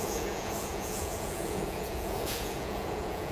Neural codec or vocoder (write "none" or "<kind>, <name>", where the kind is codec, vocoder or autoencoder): vocoder, Vocos